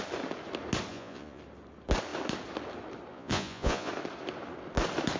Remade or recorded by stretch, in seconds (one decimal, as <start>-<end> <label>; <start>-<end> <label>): 0.0-0.9 recorded; 0.9-1.4 remade; 1.4-3.1 recorded; 3.1-3.9 remade; 3.9-5.2 recorded